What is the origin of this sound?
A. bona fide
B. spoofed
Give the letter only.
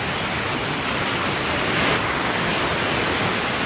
A